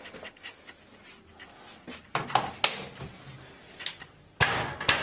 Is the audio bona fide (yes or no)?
yes